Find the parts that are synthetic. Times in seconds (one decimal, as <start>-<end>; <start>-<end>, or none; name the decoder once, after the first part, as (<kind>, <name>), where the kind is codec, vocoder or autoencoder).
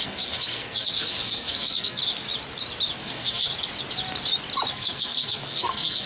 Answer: 0.0-2.0 (codec, SNAC); 3.0-3.5; 4.7-6.1